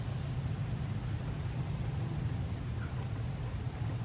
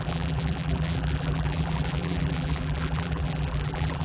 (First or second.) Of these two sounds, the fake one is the second